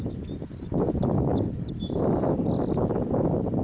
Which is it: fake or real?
real